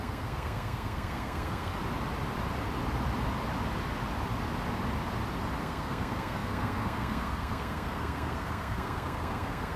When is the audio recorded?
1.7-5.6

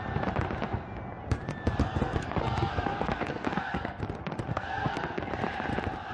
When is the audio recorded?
0.0-1.8; 4.0-4.5; 5.3-6.1

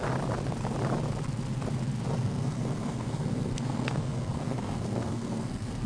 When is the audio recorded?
0.0-2.1

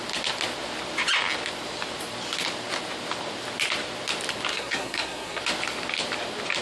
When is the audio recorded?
0.0-4.5; 5.4-6.6

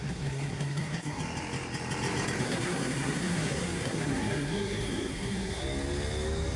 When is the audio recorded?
1.2-2.4; 5.6-6.6